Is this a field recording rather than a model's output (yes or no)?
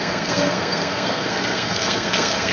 no